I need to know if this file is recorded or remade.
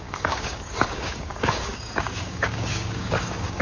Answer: remade